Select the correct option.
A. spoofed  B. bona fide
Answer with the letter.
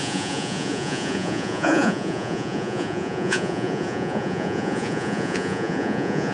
A